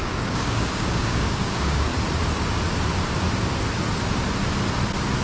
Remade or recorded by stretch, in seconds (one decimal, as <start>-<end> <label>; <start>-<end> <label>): 0.0-1.9 remade; 1.9-5.2 recorded